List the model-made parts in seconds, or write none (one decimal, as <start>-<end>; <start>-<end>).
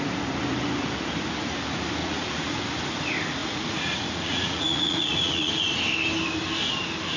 2.0-2.6; 3.4-5.5